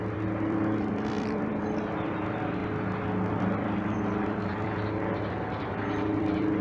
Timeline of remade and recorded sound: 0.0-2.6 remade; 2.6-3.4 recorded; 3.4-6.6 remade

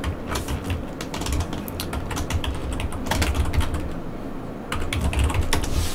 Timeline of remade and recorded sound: 0.0-5.9 recorded

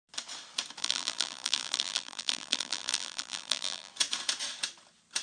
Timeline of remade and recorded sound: 0.0-0.8 recorded; 0.8-3.9 remade; 3.9-5.2 recorded

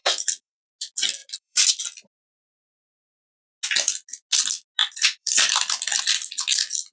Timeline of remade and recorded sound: 0.0-0.7 remade; 0.7-1.2 recorded; 1.2-1.7 remade; 1.7-4.8 recorded; 4.8-6.0 remade; 6.0-6.9 recorded

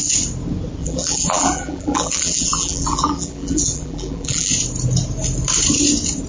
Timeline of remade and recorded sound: 0.0-0.8 recorded; 0.8-4.5 remade; 4.5-6.3 recorded

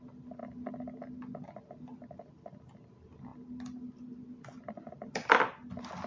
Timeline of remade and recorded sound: 0.0-0.4 remade; 0.4-1.8 recorded; 1.8-6.1 remade

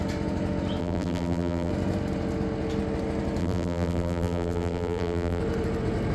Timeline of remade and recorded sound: 0.0-0.8 recorded; 0.8-1.7 remade; 1.7-3.4 recorded; 3.4-5.4 remade; 5.4-6.1 recorded

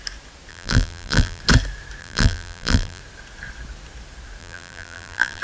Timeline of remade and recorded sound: 0.0-0.5 recorded; 0.5-1.4 remade; 1.4-2.0 recorded; 2.0-3.0 remade; 3.0-4.4 recorded; 4.4-5.4 remade